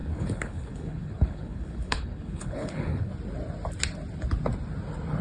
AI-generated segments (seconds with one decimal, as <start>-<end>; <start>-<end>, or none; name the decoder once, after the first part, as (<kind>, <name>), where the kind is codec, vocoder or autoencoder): 0.0-3.1 (codec, HILCodec)